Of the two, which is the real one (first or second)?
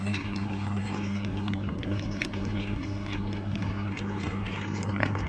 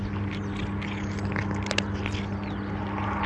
second